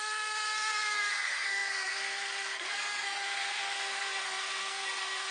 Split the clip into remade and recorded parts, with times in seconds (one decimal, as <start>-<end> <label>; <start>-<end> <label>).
0.0-5.3 remade